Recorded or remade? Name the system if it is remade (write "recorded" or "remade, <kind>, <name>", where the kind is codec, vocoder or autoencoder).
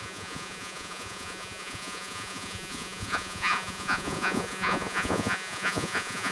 remade, vocoder, Vocos